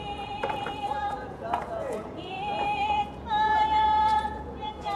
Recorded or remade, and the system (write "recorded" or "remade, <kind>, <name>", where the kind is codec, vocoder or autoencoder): remade, vocoder, Vocos